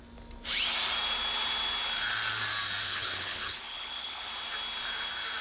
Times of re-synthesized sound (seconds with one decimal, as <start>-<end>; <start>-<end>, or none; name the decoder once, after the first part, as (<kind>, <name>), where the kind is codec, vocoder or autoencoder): 2.8-4.3 (codec, HILCodec)

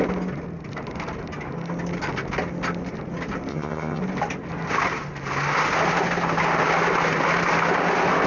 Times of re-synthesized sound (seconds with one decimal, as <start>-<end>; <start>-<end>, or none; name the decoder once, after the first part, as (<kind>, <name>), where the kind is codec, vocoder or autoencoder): 3.5-4.0 (vocoder, HiFi-GAN)